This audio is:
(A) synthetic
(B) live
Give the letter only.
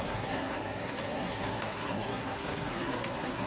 A